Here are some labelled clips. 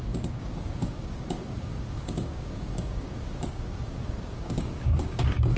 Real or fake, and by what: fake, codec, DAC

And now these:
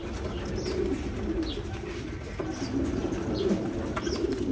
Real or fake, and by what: real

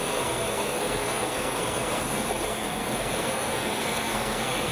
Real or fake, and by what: fake, codec, SNAC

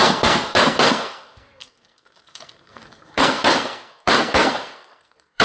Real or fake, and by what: fake, codec, SNAC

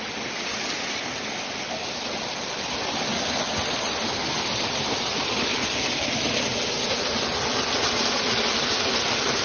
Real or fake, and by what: real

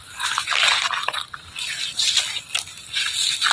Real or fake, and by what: real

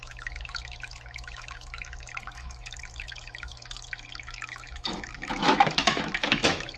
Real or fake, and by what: fake, autoencoder, DAC-VAE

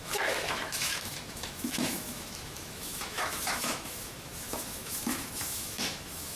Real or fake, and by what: fake, autoencoder, DAC-VAE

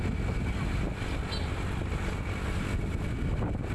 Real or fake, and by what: real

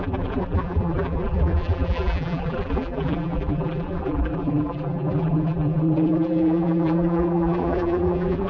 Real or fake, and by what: fake, vocoder, BigVGAN v2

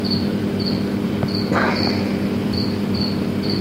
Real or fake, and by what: fake, vocoder, BigVGAN v2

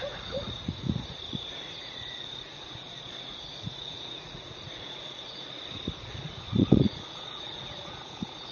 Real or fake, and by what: fake, vocoder, Vocos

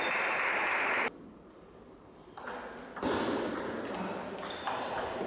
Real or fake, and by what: real